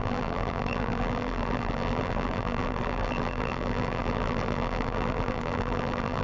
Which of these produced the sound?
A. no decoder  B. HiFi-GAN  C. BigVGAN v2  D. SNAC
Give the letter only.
C